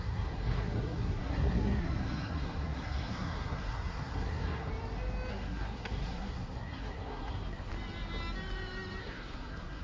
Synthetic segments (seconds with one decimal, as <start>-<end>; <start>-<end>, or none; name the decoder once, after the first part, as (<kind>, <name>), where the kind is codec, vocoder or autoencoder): 0.0-4.7 (codec, SNAC); 5.3-7.7; 9.0-9.8